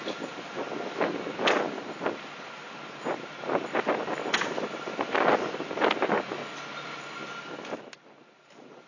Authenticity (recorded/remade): recorded